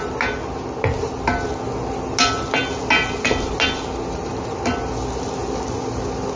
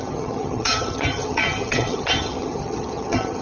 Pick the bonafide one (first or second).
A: first